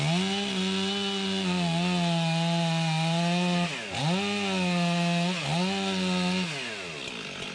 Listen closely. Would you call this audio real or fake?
real